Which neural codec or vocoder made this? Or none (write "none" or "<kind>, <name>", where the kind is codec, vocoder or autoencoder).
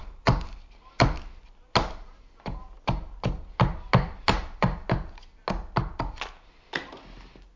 none